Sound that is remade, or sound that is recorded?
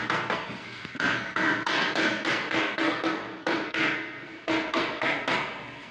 remade